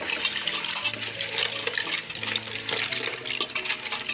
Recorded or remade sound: recorded